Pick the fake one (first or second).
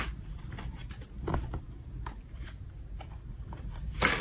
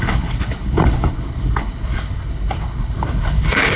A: second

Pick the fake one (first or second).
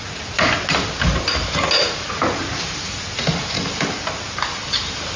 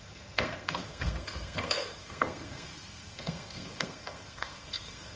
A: second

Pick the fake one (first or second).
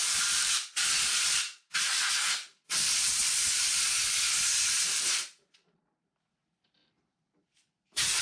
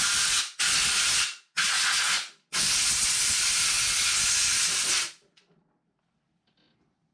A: first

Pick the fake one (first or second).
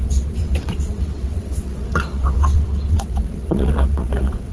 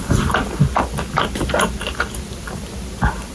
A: first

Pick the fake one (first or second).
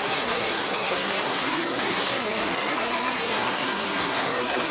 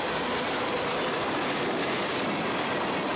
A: first